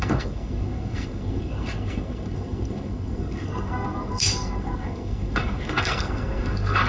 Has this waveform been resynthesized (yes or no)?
yes